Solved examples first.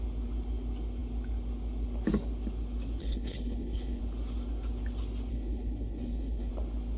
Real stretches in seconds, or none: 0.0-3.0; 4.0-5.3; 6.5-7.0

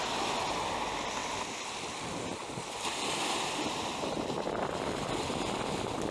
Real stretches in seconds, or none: 0.0-6.1

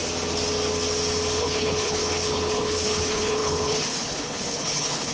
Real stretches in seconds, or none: 0.0-1.4

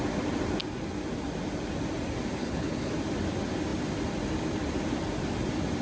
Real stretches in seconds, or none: 0.0-2.4; 2.9-5.8

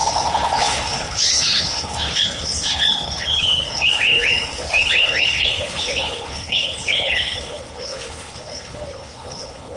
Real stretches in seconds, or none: none